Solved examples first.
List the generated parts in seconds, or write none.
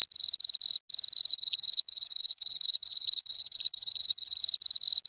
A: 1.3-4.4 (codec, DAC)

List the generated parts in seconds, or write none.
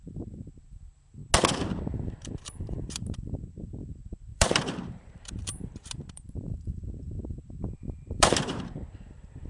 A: 0.0-1.2 (vocoder, BigVGAN v2); 1.9-9.5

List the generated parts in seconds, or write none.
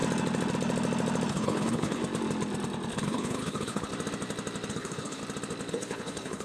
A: 1.3-2.0 (codec, HILCodec); 2.9-3.9; 4.7-5.2; 5.7-6.4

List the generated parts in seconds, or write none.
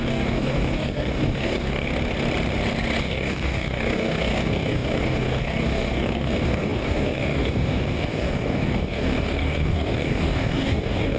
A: 0.0-1.9 (codec, DAC); 3.0-11.2